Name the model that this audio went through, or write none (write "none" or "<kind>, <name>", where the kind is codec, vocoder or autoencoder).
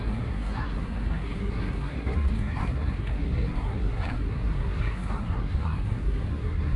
codec, SNAC